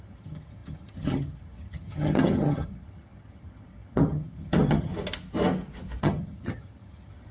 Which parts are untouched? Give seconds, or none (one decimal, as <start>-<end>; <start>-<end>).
4.9-6.0